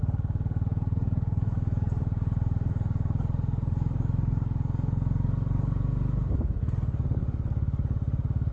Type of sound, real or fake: fake